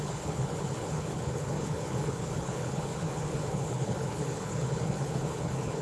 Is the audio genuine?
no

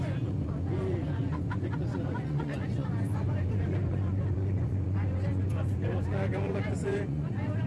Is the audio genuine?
no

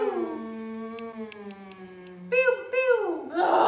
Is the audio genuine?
yes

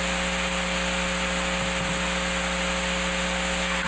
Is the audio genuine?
yes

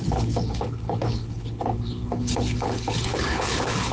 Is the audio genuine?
no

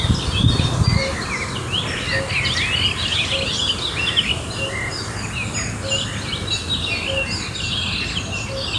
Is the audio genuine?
yes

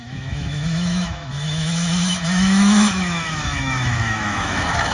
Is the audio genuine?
no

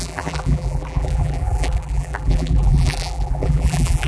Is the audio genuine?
no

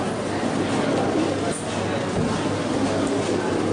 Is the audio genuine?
yes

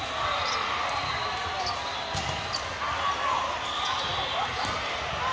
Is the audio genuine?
yes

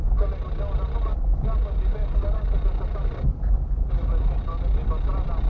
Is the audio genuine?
yes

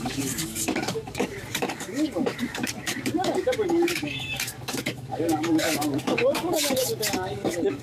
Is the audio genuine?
no